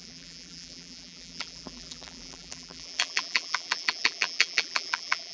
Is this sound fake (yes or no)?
yes